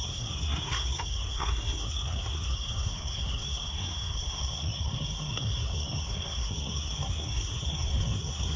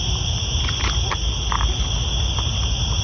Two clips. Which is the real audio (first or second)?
second